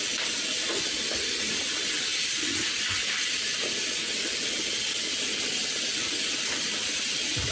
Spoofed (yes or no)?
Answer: no